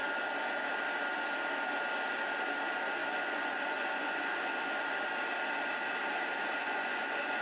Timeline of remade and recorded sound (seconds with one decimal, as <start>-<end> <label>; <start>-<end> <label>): 0.0-3.0 recorded; 3.0-4.7 remade; 4.7-6.6 recorded; 6.6-7.4 remade